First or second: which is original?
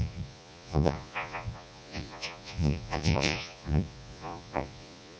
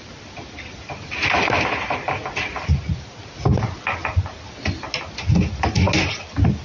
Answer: second